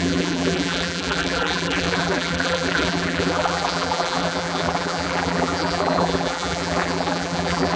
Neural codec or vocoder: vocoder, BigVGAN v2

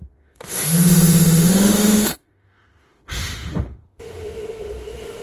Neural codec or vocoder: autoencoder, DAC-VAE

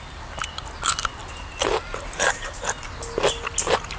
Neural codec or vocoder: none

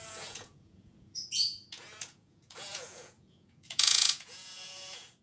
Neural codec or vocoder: vocoder, Vocos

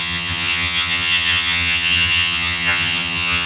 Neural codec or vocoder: vocoder, HiFi-GAN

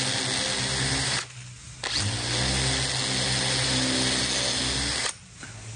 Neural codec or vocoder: none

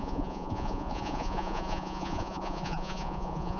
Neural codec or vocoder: vocoder, Vocos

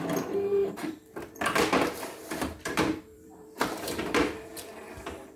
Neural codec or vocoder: vocoder, BigVGAN v2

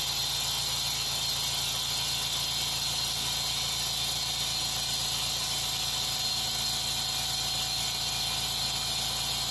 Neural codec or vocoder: none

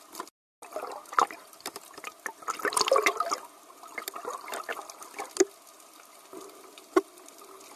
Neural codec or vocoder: none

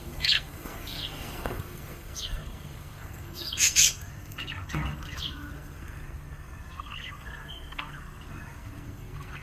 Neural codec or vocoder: codec, SNAC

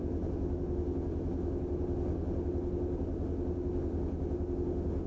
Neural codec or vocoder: none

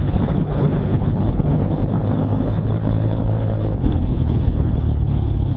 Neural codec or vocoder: codec, HILCodec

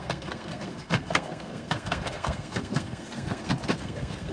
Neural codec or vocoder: codec, SNAC